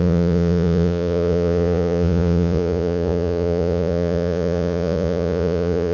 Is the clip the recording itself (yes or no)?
no